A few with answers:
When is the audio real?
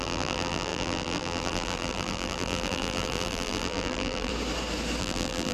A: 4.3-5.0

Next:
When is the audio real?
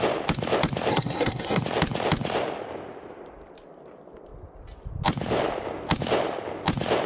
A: 0.0-0.9; 1.6-7.1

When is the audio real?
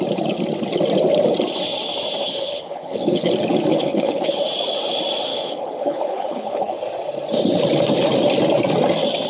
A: 0.0-2.2; 3.3-3.7; 4.4-5.3; 6.8-9.3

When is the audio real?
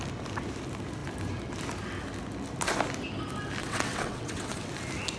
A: 0.0-3.6; 4.7-5.2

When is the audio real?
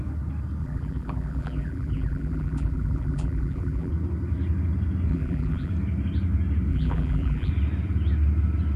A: 0.0-0.6; 3.9-5.1; 5.7-6.7; 7.5-8.8